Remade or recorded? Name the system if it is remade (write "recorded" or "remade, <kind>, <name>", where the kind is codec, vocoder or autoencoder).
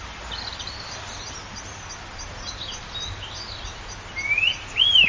recorded